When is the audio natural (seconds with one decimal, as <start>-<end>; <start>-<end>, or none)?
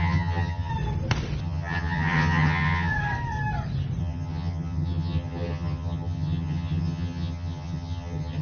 0.7-1.4; 2.9-4.0